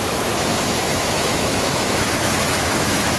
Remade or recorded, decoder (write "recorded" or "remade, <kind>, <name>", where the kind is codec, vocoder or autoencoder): remade, autoencoder, DAC-VAE